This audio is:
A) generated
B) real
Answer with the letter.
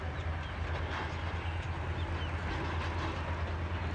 B